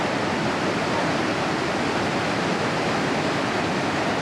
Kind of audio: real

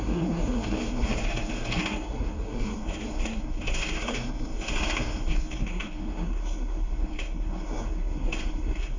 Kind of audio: fake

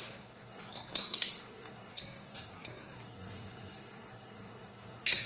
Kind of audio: fake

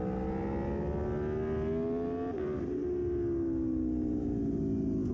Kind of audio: real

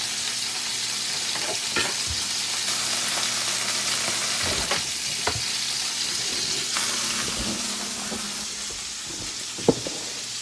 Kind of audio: real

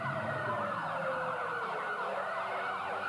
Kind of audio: real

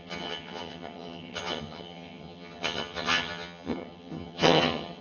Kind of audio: fake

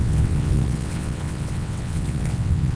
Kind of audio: fake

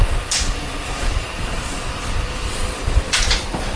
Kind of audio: real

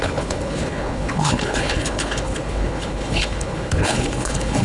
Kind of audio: fake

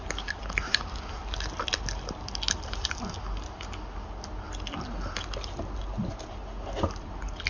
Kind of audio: real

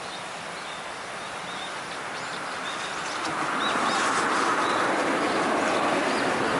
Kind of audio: real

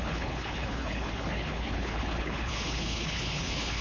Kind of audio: fake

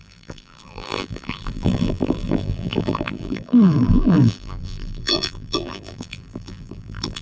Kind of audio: fake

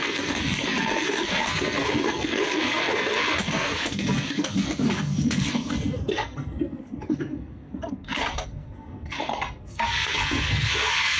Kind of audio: fake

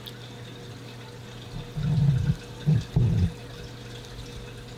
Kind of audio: real